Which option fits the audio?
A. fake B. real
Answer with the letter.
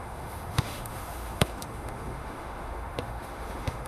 A